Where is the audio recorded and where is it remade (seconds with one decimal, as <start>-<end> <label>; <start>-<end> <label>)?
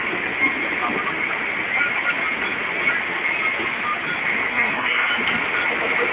0.0-4.5 recorded; 4.5-5.1 remade; 5.1-6.1 recorded